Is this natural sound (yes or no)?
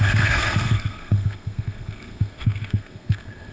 no